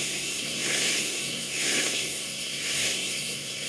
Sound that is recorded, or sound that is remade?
remade